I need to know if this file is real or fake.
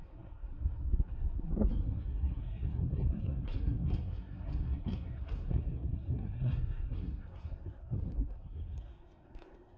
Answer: fake